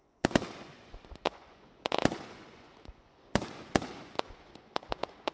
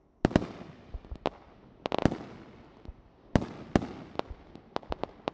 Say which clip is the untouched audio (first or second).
second